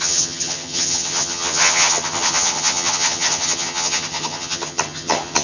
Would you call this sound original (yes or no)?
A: no